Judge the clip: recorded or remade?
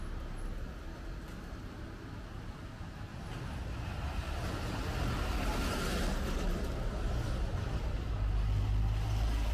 recorded